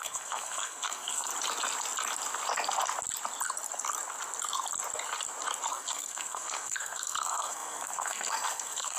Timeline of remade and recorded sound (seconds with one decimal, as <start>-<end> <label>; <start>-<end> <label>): 0.0-1.3 remade; 1.3-5.7 recorded; 5.7-9.0 remade